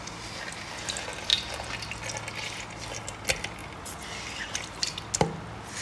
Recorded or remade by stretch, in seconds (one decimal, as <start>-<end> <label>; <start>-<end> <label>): 0.0-5.8 recorded